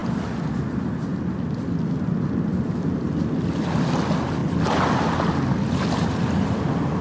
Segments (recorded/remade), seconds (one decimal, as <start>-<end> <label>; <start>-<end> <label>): 0.0-7.0 recorded